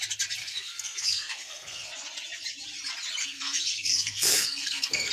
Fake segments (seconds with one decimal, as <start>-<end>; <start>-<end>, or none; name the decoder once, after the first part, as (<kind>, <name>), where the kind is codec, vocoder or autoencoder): 0.4-1.9 (codec, SNAC); 3.2-5.1